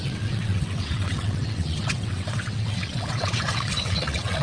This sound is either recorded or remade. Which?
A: remade